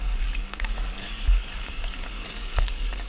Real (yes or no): no